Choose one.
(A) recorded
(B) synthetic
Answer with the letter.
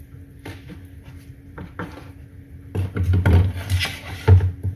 A